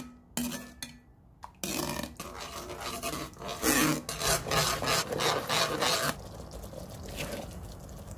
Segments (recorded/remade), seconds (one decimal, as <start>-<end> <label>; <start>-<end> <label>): 0.0-8.2 recorded